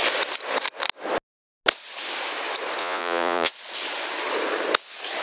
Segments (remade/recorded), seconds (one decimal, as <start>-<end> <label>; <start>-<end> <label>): 0.0-2.8 recorded; 2.8-3.5 remade; 3.5-5.2 recorded